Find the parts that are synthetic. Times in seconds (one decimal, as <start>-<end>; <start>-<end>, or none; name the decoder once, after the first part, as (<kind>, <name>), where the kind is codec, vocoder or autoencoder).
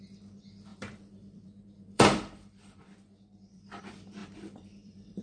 0.7-3.8 (vocoder, BigVGAN v2); 4.2-5.2